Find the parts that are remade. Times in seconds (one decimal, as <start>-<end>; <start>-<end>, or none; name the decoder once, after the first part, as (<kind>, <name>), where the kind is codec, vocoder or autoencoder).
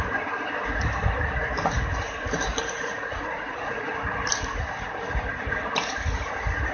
2.5-3.8 (vocoder, Vocos)